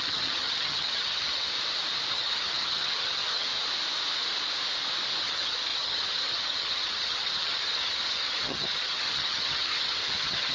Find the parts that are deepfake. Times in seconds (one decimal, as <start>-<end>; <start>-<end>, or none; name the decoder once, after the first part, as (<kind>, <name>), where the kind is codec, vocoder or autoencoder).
0.0-1.5 (vocoder, HiFi-GAN); 2.1-3.5; 5.2-10.5